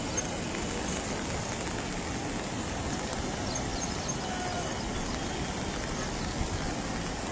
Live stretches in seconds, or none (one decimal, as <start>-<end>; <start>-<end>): 0.0-7.3